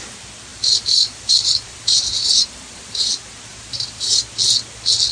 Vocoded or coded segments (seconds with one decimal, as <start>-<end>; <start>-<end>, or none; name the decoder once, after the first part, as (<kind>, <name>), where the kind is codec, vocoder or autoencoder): 0.5-3.1 (vocoder, BigVGAN v2); 3.5-4.2